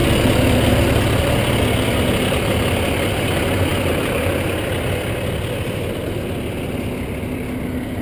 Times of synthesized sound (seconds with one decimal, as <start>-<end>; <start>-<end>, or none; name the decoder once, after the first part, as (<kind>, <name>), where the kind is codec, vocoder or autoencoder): none